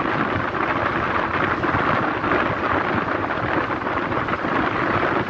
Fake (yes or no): no